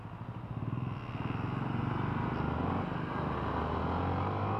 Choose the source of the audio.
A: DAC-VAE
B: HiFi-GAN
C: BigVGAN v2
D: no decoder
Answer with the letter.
D